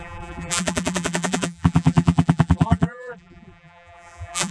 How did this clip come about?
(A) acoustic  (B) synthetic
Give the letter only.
B